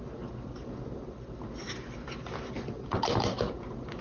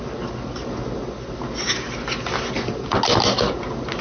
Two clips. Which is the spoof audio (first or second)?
first